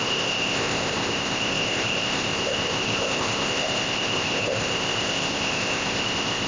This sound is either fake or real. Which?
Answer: fake